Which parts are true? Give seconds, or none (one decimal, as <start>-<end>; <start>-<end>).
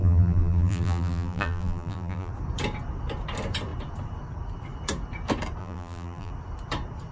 2.3-5.6; 6.3-7.1